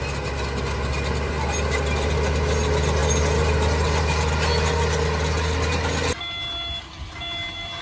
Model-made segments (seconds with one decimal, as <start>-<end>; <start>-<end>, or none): none